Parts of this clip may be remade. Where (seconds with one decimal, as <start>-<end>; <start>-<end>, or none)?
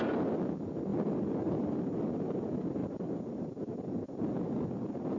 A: none